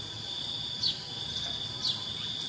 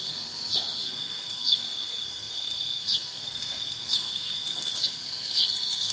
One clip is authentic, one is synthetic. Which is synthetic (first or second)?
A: second